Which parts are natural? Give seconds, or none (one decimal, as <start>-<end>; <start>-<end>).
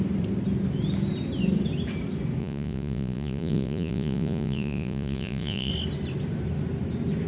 0.0-2.4; 5.7-7.3